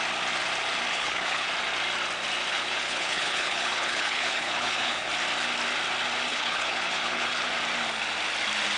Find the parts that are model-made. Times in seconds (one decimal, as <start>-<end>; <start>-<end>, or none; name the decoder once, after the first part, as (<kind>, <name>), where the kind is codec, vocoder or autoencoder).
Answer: 0.9-1.5 (codec, HILCodec); 2.5-5.1; 6.3-7.4